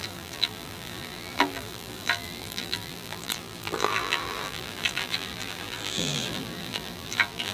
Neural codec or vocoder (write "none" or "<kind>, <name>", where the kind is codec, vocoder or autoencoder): vocoder, BigVGAN v2